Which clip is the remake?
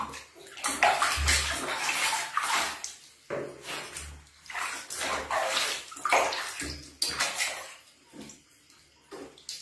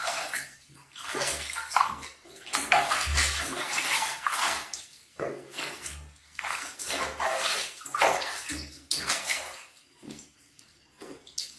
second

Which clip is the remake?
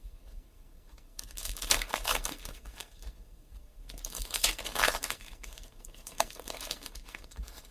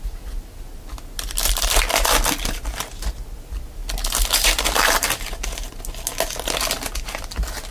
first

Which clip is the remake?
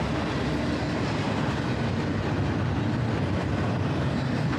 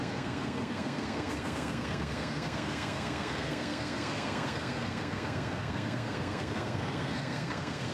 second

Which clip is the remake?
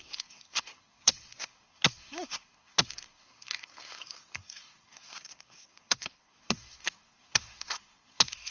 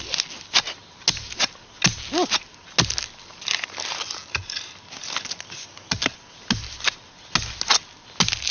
first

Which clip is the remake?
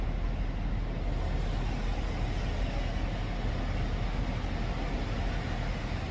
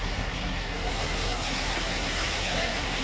second